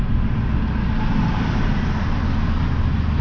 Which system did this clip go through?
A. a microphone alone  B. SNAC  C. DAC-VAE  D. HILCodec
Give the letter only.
A